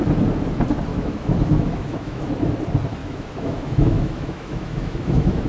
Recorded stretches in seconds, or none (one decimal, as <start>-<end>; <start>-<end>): 0.0-0.9; 2.2-3.0